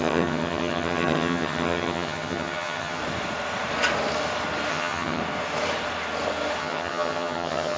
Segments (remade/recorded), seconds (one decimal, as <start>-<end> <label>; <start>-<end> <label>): 0.0-3.0 remade; 3.0-4.7 recorded; 4.7-5.2 remade; 5.2-6.6 recorded; 6.6-7.8 remade